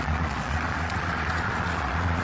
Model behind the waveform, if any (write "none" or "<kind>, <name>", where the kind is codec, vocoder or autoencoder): vocoder, Vocos